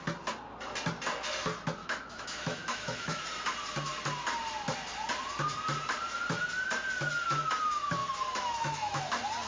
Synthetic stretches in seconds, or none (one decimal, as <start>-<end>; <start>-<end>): 1.8-3.2; 8.0-9.0